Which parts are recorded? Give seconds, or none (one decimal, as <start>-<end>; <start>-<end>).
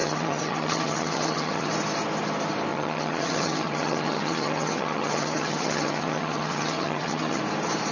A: 1.7-2.7; 7.4-7.9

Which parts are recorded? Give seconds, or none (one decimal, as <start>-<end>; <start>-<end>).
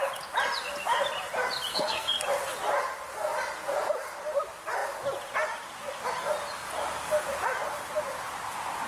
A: 0.0-1.7; 2.2-8.9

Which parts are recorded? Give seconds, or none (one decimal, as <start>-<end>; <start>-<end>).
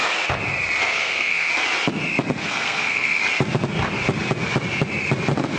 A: 0.0-0.8; 1.5-2.4; 3.2-5.6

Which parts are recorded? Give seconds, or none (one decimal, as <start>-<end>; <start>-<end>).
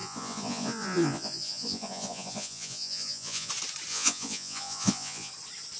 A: 3.5-3.9; 5.3-5.8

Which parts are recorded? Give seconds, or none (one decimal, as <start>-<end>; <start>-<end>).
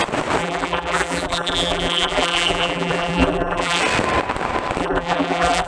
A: 0.0-0.4; 3.8-4.8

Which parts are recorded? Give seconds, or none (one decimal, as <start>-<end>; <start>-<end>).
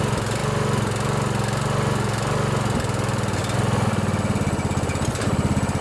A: 0.0-5.8